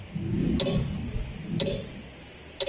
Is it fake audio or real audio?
real